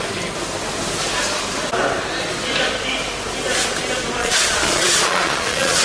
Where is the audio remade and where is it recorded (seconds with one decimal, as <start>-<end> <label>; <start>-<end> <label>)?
0.0-4.2 recorded; 4.2-5.8 remade